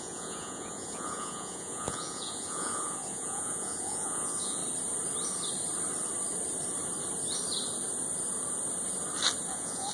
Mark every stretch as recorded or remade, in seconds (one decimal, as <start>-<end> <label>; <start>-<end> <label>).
0.0-4.6 remade; 4.6-9.5 recorded; 9.5-9.9 remade